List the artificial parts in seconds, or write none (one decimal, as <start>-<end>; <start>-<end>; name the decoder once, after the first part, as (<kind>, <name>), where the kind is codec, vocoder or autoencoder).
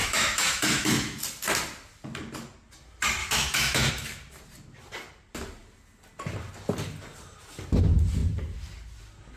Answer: 0.0-1.2 (autoencoder, DAC-VAE); 3.2-3.9